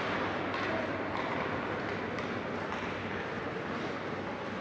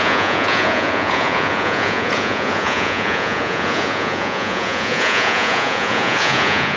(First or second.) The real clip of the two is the first